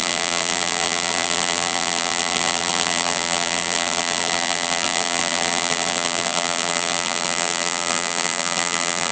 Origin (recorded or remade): remade